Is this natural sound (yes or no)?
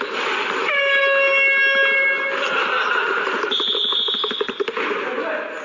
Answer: yes